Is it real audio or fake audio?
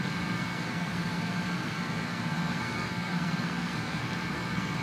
fake